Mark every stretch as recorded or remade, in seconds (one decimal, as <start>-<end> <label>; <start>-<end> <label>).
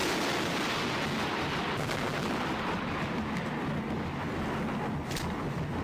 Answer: 0.0-5.8 recorded